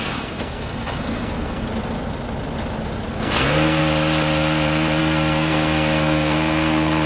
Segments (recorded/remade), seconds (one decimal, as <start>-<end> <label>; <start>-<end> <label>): 0.0-1.7 remade; 1.7-3.1 recorded; 3.1-3.8 remade; 3.8-5.0 recorded; 5.0-7.1 remade